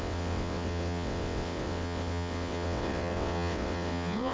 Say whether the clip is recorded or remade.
remade